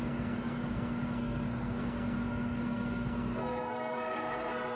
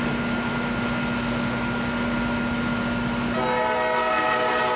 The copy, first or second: first